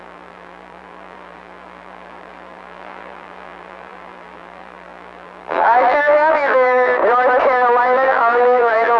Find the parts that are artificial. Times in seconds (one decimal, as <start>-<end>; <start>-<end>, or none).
0.0-7.0; 7.8-9.0